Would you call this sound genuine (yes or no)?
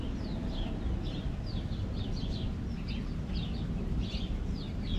yes